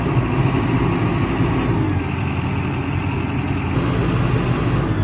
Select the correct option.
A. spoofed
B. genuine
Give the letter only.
B